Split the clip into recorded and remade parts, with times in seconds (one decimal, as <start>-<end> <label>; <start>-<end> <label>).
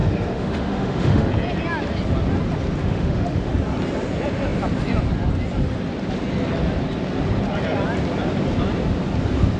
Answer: 0.0-1.3 remade; 1.3-2.8 recorded; 2.8-3.5 remade; 3.5-9.6 recorded